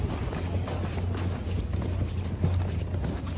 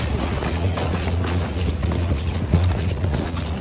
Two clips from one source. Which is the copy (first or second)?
second